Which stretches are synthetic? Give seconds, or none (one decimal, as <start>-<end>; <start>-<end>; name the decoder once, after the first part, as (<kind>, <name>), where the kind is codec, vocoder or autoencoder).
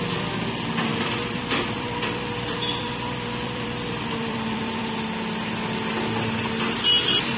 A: 0.9-4.9 (vocoder, BigVGAN v2)